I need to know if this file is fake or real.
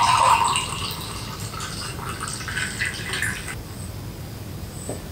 real